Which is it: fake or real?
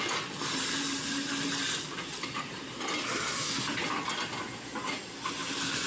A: real